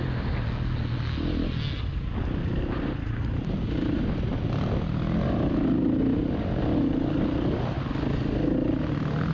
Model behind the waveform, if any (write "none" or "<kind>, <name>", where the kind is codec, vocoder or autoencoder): none